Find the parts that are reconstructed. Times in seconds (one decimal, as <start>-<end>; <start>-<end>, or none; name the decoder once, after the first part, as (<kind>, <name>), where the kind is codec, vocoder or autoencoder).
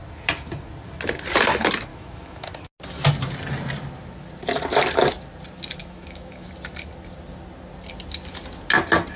1.9-2.5 (autoencoder, DAC-VAE); 5.8-6.5